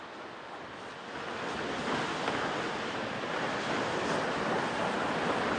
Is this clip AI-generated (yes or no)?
no